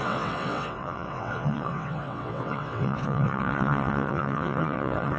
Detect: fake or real fake